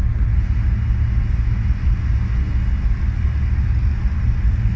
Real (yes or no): yes